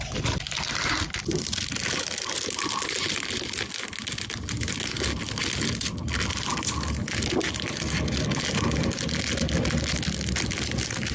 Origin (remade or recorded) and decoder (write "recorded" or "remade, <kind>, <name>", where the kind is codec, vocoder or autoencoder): recorded